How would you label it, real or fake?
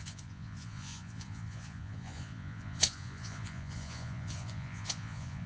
fake